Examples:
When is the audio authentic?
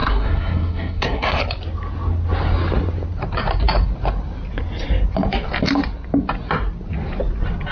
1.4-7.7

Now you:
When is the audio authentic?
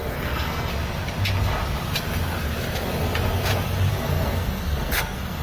0.7-3.9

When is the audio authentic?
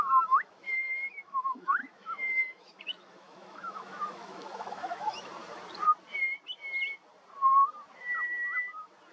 5.3-9.1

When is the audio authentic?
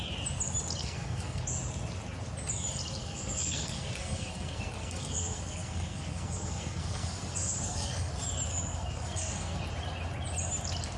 0.0-0.8; 1.4-3.0; 8.1-8.5; 9.6-11.0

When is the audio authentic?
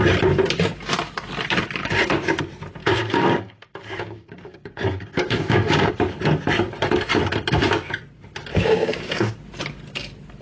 0.0-1.8; 2.4-2.8; 5.9-8.5; 9.3-10.4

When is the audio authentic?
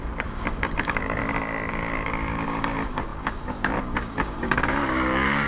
1.2-1.7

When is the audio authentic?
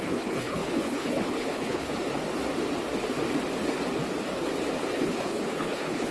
1.9-4.9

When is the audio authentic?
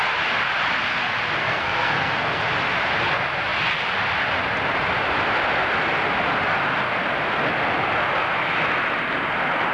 0.0-1.4; 2.4-9.7